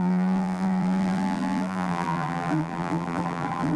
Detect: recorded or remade remade